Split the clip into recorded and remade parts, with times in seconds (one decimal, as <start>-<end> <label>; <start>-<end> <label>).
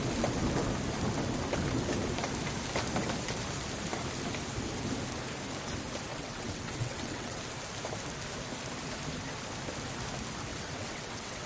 0.0-6.1 recorded; 6.1-7.4 remade; 7.4-10.5 recorded; 10.5-11.5 remade